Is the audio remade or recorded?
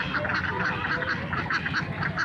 recorded